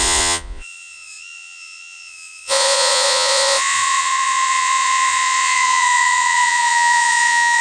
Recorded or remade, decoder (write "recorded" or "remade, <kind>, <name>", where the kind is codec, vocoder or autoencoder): remade, vocoder, Vocos